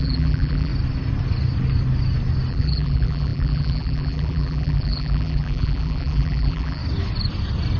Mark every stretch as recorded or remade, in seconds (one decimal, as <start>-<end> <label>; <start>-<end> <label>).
0.0-0.7 remade; 0.7-2.5 recorded; 2.5-6.8 remade; 6.8-7.8 recorded